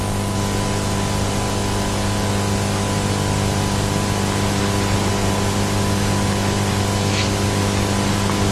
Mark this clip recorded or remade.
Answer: recorded